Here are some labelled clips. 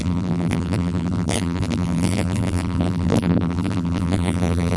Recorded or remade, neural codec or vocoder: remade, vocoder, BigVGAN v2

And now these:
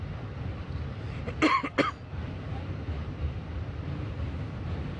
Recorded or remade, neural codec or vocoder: recorded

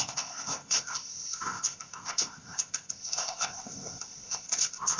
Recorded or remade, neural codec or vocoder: remade, codec, ZipCodec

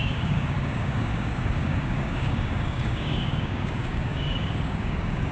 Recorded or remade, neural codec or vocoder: remade, codec, DAC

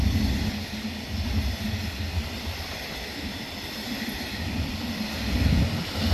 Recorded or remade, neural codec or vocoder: recorded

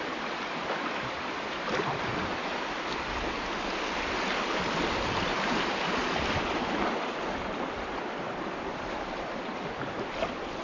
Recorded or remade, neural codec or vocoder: remade, vocoder, BigVGAN v2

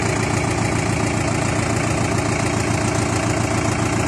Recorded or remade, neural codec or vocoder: recorded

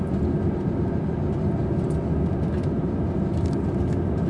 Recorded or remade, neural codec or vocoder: recorded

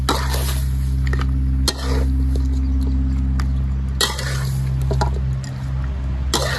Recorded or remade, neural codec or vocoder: recorded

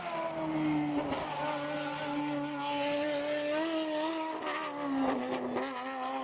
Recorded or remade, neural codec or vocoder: recorded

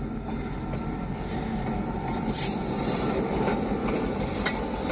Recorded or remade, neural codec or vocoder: recorded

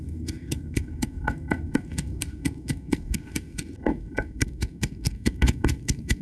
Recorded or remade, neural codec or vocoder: remade, codec, SNAC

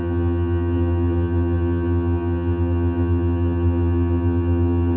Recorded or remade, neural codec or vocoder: remade, vocoder, HiFi-GAN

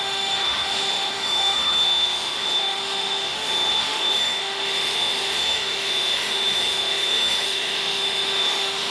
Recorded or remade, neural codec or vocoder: remade, autoencoder, DAC-VAE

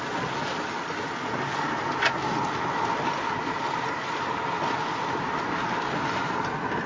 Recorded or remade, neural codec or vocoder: recorded